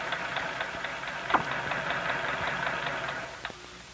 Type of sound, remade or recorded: recorded